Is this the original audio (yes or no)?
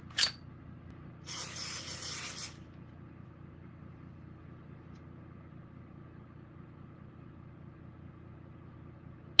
yes